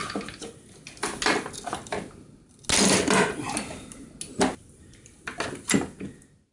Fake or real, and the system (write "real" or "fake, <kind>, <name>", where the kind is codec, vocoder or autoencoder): real